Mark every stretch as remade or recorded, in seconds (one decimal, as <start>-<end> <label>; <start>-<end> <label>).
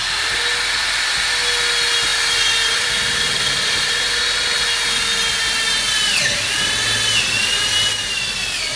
0.0-2.1 recorded; 2.1-3.9 remade; 3.9-7.4 recorded; 7.4-8.8 remade